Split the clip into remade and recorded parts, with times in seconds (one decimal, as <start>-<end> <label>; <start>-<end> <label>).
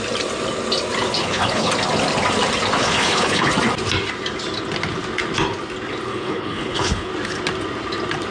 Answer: 0.0-1.2 recorded; 1.2-1.7 remade; 1.7-2.8 recorded; 2.8-3.5 remade; 3.5-6.1 recorded; 6.1-7.1 remade; 7.1-8.3 recorded